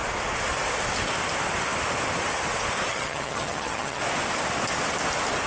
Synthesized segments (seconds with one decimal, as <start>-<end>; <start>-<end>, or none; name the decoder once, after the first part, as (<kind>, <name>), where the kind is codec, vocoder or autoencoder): 2.9-4.0 (vocoder, HiFi-GAN)